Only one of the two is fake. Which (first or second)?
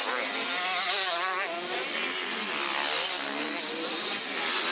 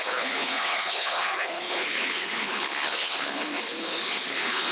second